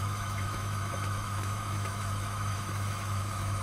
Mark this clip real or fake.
fake